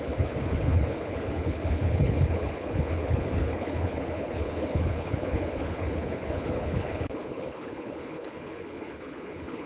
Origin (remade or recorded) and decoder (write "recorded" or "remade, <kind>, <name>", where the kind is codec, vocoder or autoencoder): remade, codec, HILCodec